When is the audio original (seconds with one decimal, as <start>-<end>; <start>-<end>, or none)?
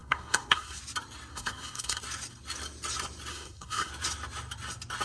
0.8-1.3; 2.0-3.3; 3.9-5.0